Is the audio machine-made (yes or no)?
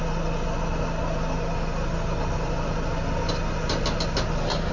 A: no